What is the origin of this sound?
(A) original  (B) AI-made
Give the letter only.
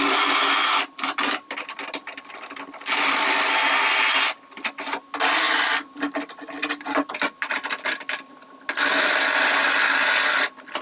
A